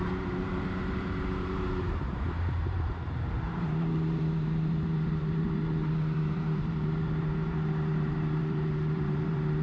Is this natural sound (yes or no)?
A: no